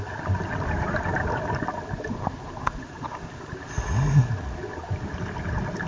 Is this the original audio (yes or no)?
yes